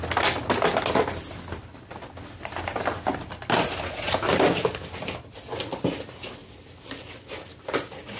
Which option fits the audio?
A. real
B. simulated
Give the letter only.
A